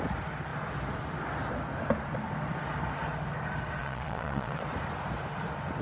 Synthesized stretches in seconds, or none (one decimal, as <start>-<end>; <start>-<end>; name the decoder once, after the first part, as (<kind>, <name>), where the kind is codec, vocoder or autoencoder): 3.8-4.6 (vocoder, Vocos)